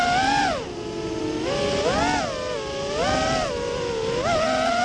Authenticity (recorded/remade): recorded